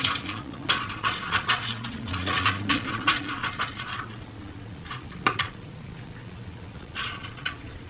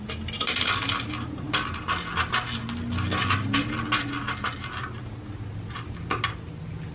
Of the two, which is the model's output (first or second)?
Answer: first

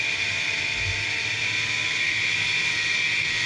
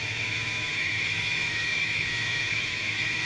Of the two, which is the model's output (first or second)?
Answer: second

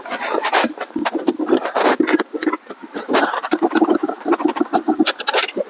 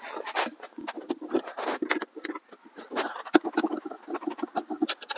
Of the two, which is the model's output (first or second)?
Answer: first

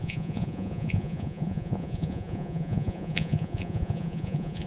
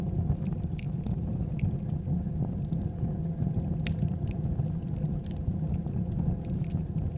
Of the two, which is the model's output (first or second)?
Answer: first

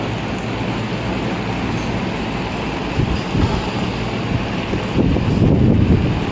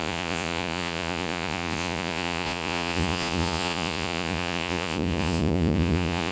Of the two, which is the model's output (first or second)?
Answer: second